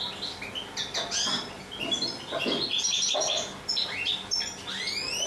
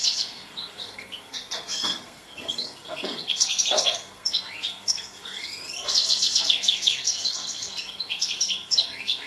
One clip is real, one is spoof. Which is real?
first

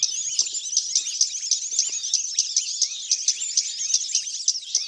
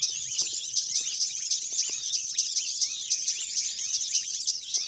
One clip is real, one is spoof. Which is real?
first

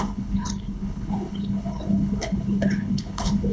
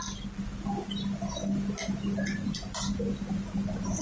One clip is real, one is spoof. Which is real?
second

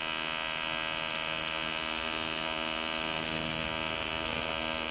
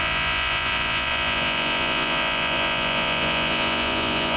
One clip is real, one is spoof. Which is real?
first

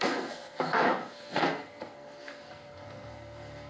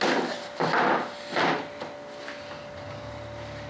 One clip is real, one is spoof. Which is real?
second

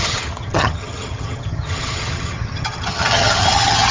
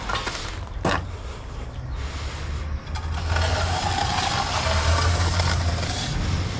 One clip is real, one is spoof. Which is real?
second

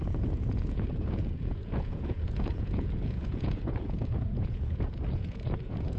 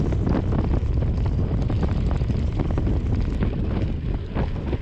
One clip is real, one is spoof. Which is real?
second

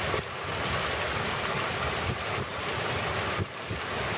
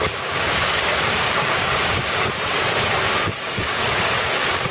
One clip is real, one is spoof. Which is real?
first